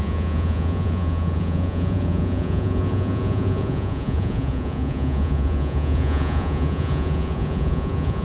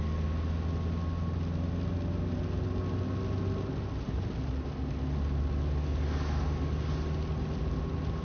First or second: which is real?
second